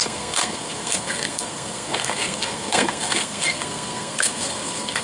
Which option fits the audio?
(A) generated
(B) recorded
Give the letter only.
A